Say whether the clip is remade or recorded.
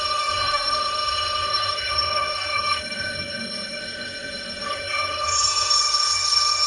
remade